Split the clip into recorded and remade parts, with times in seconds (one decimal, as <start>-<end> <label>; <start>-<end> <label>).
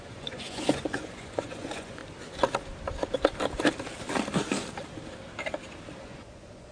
0.0-2.0 remade; 2.0-6.0 recorded; 6.0-6.7 remade